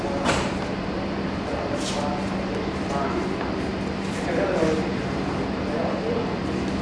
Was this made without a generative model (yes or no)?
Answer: yes